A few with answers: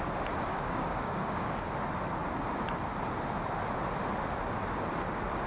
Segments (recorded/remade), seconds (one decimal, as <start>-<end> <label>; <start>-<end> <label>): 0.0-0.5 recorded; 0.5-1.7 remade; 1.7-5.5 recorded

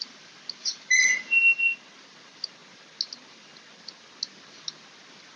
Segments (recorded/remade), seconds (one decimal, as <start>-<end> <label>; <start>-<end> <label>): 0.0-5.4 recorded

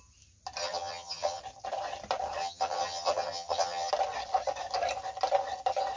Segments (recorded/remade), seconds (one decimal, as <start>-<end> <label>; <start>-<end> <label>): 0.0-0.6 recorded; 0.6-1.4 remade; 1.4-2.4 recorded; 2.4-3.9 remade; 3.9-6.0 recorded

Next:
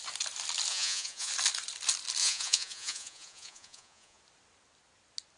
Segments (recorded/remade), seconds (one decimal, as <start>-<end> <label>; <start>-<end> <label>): 0.0-0.7 recorded; 0.7-1.3 remade; 1.3-2.2 recorded; 2.2-4.2 remade; 4.2-5.4 recorded

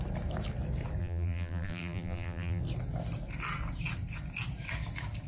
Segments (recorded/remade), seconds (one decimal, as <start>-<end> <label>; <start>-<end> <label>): 0.0-1.0 recorded; 1.0-2.6 remade; 2.6-5.3 recorded